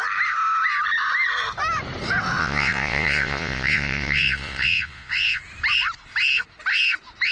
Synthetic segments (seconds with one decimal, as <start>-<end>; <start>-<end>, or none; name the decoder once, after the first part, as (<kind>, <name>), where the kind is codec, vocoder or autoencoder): 2.4-5.4 (vocoder, Vocos)